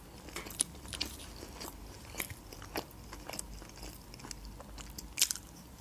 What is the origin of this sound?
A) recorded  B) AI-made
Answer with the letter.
A